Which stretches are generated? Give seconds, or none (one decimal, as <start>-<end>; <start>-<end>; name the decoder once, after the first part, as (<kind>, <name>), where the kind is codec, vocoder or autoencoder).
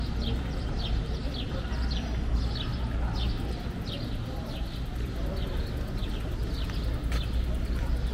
none